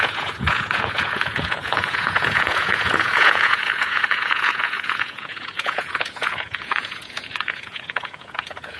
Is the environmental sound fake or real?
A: fake